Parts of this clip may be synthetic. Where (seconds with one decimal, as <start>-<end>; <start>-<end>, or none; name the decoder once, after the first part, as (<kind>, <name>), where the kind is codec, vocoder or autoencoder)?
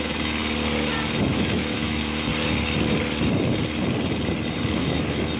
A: 0.0-0.4 (autoencoder, DAC-VAE); 1.2-2.3; 4.8-5.4